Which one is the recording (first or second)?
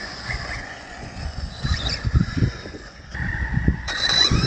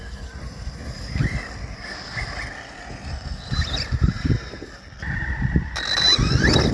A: second